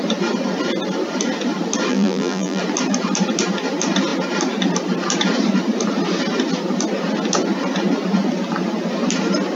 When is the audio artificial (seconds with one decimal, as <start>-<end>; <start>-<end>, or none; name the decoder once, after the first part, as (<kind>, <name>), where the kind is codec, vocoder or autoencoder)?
1.9-2.6 (vocoder, BigVGAN v2)